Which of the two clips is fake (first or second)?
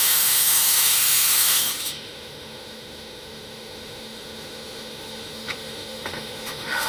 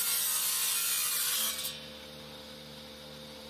first